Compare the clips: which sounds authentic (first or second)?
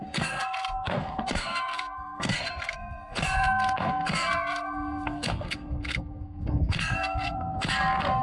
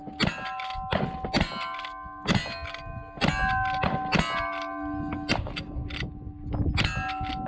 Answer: second